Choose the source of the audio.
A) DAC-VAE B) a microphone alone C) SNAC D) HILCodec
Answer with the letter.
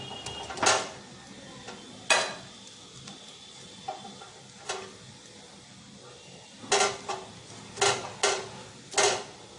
B